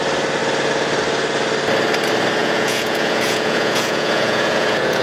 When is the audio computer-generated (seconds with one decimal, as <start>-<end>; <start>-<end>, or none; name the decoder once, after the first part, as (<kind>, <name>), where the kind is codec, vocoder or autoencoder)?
2.4-5.0 (vocoder, Vocos)